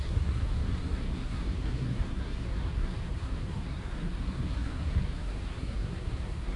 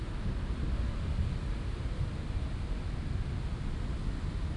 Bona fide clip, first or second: second